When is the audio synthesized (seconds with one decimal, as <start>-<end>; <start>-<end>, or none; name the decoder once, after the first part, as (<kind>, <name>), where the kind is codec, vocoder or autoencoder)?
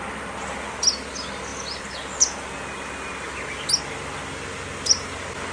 none